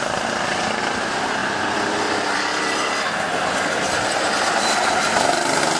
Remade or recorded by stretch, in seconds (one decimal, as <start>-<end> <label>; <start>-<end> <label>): 0.0-5.8 recorded